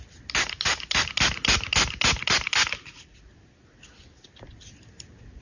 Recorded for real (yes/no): yes